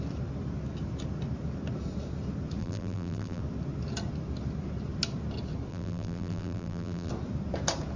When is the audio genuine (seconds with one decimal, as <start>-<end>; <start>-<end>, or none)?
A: 0.0-2.6; 3.4-5.7; 7.1-8.0